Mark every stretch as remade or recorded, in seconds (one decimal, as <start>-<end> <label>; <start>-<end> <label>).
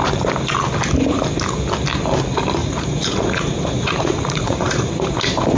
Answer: 0.0-2.6 recorded; 2.6-4.9 remade; 4.9-5.6 recorded